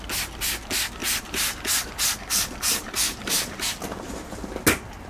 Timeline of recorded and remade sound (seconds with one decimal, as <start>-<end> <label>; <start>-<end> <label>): 0.0-1.0 recorded; 1.0-4.1 remade; 4.1-5.1 recorded